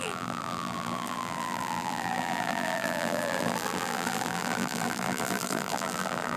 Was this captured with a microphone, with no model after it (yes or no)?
no